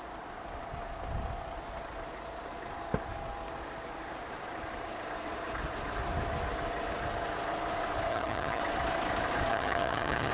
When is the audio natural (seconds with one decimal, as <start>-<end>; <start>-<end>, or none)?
0.0-8.1; 8.6-9.5